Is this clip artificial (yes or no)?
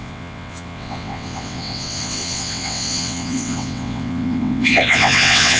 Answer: yes